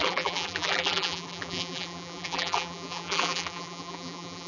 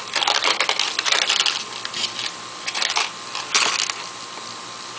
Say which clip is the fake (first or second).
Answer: first